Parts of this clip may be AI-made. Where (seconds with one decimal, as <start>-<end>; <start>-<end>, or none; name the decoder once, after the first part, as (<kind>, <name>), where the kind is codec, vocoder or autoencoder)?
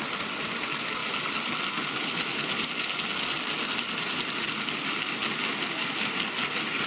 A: none